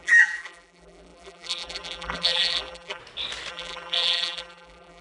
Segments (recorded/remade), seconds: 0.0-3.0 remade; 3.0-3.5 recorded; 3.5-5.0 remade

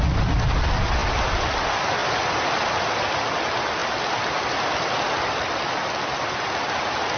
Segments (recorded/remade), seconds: 0.0-7.2 recorded

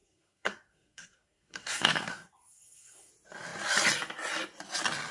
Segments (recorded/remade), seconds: 0.0-3.1 remade; 3.1-5.1 recorded

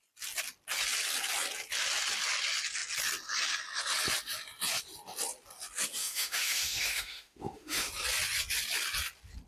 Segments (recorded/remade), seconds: 0.0-6.0 recorded; 6.0-7.9 remade; 7.9-9.5 recorded

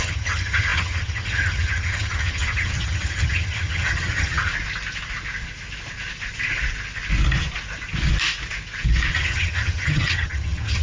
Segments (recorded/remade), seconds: 0.0-4.5 remade; 4.5-9.1 recorded; 9.1-10.8 remade

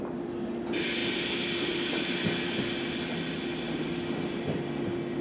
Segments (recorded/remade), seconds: 0.0-5.2 recorded

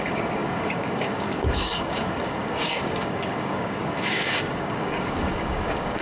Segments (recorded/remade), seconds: 0.0-6.0 remade